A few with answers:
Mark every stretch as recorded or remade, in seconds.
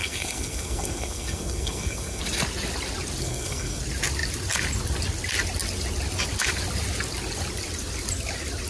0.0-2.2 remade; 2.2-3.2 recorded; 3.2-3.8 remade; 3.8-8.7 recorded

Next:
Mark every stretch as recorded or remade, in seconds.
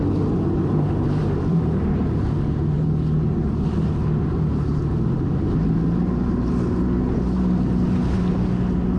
0.0-9.0 recorded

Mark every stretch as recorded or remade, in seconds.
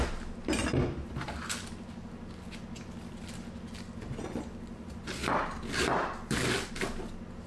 0.0-7.5 recorded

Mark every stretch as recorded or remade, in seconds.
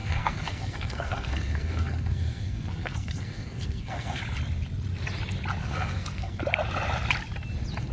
0.0-4.2 remade; 4.2-5.6 recorded; 5.6-6.4 remade; 6.4-7.9 recorded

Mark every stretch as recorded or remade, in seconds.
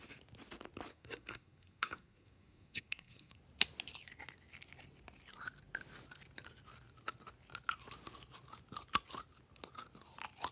0.0-0.9 recorded; 0.9-3.4 remade; 3.4-10.5 recorded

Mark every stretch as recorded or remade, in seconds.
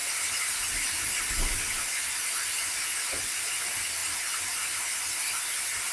0.0-5.9 recorded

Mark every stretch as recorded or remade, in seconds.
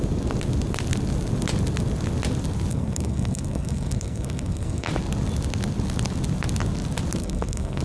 0.0-2.7 recorded; 2.7-4.9 remade; 4.9-7.2 recorded; 7.2-7.8 remade